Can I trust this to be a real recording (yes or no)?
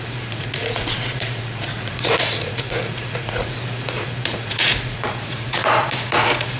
no